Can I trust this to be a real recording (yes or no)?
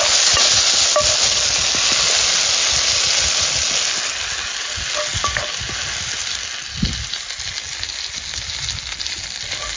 yes